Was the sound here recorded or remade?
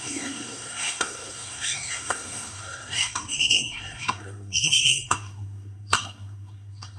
remade